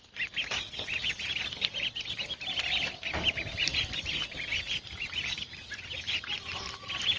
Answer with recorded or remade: recorded